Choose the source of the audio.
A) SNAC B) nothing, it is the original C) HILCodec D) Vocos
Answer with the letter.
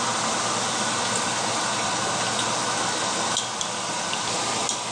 B